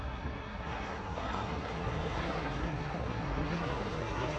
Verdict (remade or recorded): remade